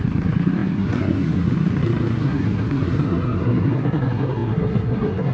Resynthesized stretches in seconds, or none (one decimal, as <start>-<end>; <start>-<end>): 0.0-5.3